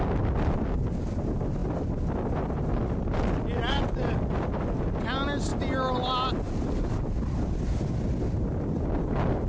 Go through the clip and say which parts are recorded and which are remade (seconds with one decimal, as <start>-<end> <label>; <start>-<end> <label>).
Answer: 0.0-9.5 recorded